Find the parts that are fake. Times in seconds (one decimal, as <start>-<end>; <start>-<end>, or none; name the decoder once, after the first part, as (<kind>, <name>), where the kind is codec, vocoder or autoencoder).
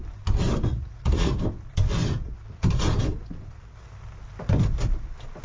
0.7-1.3 (vocoder, Vocos)